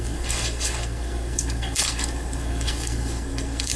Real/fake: fake